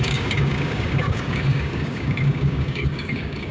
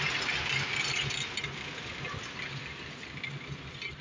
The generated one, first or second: first